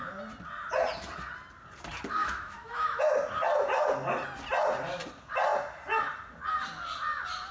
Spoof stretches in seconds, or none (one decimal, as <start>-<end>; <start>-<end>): 2.2-3.0